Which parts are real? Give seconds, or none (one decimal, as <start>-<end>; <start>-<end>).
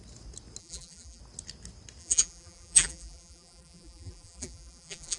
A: 0.0-0.6; 1.2-2.0